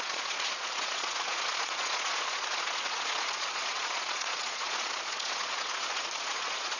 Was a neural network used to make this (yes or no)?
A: yes